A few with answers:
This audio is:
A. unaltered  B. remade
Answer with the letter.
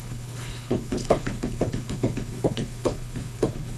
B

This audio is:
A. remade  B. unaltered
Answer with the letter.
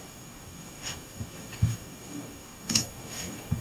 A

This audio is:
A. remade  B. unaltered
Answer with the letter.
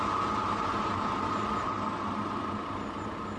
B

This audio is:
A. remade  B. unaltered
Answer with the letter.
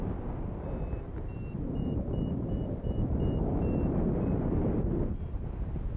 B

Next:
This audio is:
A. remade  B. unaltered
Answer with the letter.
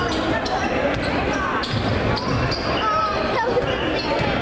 B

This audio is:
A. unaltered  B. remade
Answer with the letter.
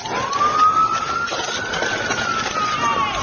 A